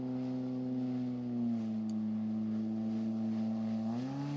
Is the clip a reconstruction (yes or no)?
no